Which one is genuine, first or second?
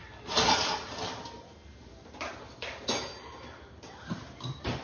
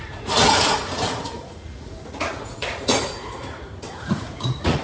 first